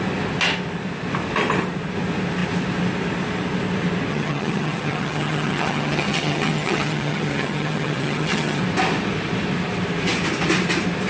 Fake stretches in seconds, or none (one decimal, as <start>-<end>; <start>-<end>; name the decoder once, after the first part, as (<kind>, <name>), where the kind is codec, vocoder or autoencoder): 4.1-8.6 (vocoder, HiFi-GAN)